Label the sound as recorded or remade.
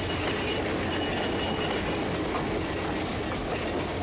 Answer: recorded